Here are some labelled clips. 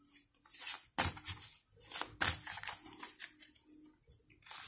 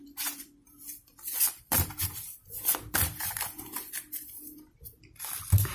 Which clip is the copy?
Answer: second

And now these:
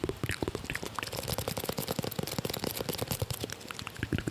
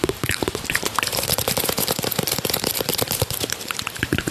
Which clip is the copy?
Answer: second